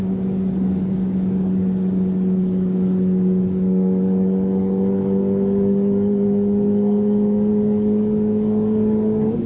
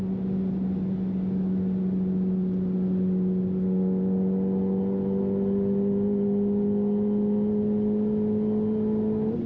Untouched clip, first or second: second